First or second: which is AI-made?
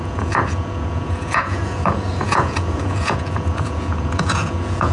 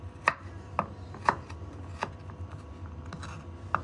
first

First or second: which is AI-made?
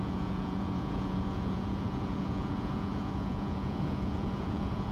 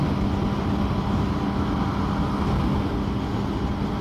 first